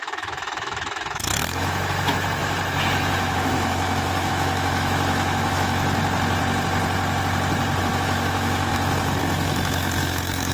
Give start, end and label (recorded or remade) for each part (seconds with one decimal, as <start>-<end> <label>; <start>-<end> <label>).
0.0-6.0 remade; 6.0-7.8 recorded; 7.8-10.5 remade